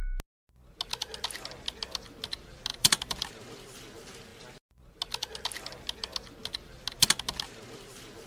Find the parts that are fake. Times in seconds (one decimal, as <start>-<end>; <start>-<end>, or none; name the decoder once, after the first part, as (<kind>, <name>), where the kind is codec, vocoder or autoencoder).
2.7-3.3 (vocoder, BigVGAN v2)